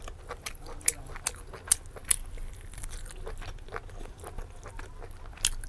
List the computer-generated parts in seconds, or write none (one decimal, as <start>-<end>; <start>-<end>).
none